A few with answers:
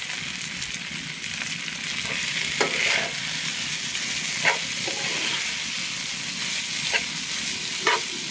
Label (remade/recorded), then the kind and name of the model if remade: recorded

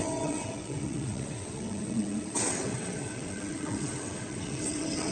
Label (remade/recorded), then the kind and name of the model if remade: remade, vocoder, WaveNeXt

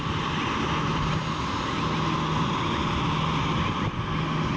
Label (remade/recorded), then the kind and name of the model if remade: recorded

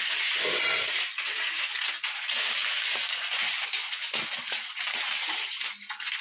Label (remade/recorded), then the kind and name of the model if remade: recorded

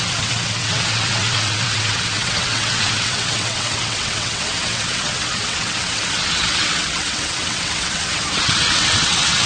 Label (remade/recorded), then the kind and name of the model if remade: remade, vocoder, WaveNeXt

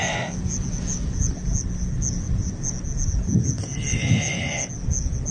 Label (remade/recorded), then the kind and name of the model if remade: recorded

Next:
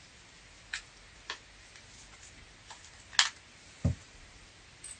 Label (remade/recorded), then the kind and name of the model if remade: recorded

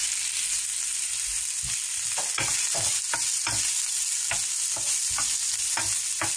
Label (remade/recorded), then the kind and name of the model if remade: recorded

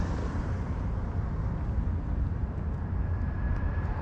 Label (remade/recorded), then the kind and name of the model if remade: recorded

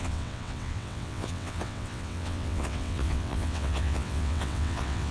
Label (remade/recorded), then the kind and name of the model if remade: remade, vocoder, WaveNeXt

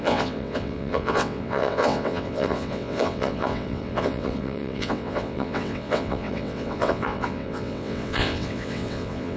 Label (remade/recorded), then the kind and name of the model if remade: remade, vocoder, WaveNeXt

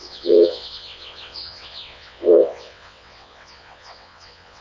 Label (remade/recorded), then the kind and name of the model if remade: remade, vocoder, WaveNeXt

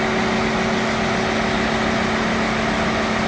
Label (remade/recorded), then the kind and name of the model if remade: recorded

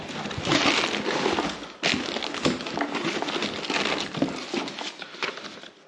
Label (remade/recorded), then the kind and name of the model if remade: recorded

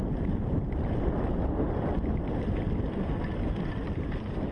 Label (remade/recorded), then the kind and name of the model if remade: recorded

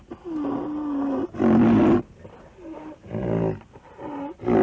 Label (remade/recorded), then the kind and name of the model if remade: recorded